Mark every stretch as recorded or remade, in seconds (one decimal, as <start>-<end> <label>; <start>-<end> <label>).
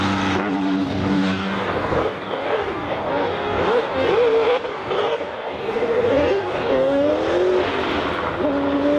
0.0-0.8 recorded; 0.8-4.1 remade; 4.1-4.7 recorded; 4.7-7.1 remade; 7.1-9.0 recorded